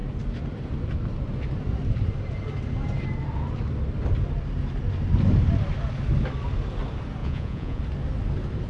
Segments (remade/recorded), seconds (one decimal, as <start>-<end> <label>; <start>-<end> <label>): 0.0-7.2 recorded; 7.2-7.8 remade; 7.8-8.7 recorded